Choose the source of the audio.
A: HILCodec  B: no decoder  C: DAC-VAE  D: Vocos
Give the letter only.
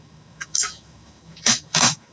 C